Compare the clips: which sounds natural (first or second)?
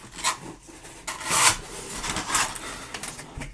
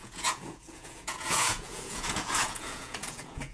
first